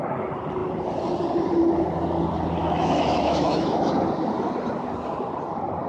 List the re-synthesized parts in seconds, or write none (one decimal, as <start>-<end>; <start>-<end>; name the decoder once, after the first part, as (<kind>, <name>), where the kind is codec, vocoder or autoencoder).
2.6-3.9 (autoencoder, DAC-VAE)